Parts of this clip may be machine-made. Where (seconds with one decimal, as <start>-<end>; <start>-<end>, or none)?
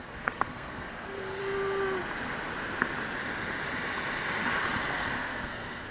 0.0-1.4; 4.9-5.9